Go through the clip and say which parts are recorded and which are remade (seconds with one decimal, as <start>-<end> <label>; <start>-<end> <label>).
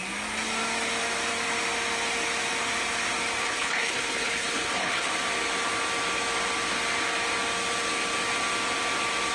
0.0-3.4 recorded; 3.4-5.1 remade; 5.1-9.3 recorded